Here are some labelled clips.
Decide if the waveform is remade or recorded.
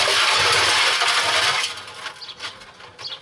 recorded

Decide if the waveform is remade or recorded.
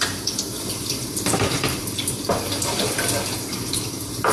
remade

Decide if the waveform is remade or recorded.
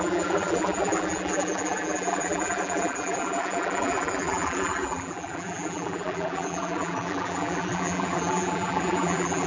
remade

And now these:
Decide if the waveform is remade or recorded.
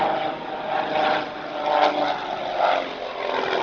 recorded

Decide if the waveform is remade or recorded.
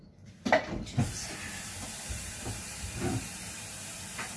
remade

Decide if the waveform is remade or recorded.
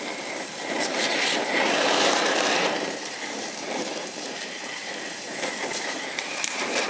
remade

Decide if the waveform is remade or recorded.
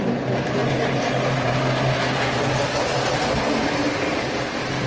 recorded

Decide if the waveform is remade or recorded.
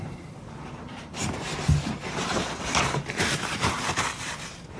remade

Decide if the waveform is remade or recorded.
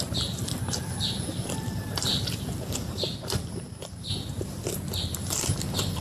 remade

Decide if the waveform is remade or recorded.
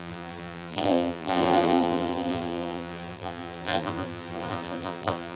remade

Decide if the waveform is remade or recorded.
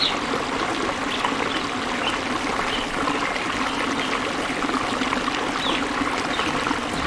recorded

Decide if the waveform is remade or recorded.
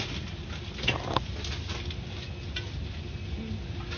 recorded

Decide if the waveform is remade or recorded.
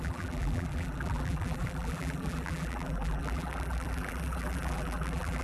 remade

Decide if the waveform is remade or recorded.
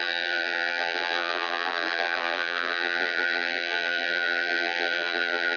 remade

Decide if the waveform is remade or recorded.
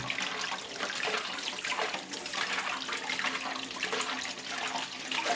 recorded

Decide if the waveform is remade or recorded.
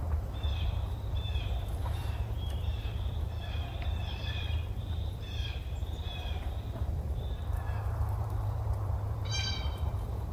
remade